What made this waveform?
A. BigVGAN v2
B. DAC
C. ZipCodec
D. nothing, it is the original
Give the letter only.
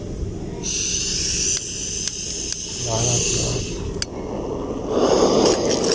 D